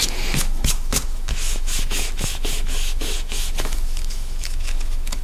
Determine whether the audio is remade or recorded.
remade